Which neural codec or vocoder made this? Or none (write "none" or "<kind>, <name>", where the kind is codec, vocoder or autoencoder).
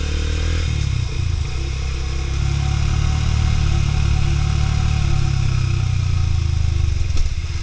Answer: none